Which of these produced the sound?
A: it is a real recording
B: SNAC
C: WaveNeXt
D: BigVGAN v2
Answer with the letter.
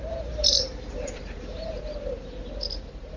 D